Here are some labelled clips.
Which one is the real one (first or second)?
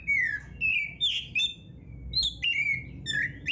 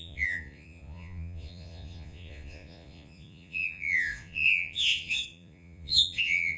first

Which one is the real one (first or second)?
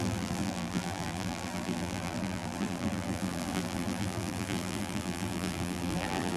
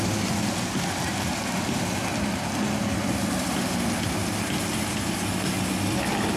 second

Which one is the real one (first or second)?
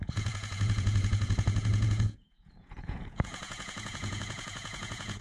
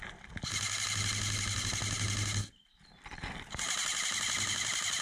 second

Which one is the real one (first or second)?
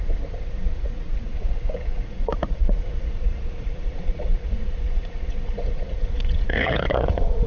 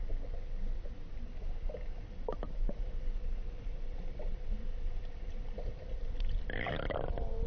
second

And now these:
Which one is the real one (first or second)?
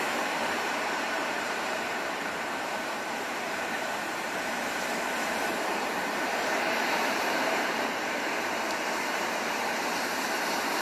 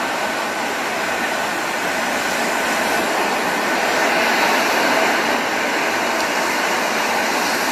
second